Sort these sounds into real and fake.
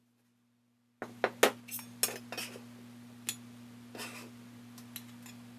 real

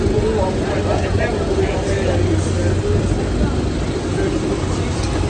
real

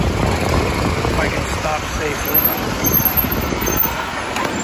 real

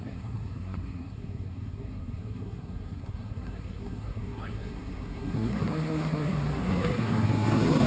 fake